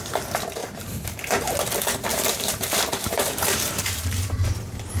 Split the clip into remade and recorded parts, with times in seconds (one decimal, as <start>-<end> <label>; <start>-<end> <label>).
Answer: 0.0-0.6 recorded; 0.6-1.5 remade; 1.5-2.1 recorded; 2.1-4.4 remade; 4.4-5.0 recorded